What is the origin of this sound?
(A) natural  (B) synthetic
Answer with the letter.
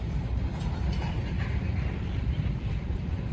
B